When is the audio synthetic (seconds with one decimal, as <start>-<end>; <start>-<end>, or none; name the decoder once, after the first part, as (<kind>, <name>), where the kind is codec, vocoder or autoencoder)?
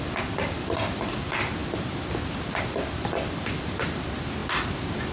none